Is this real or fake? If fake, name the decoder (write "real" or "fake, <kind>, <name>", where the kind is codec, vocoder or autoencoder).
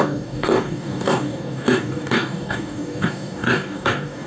fake, codec, DAC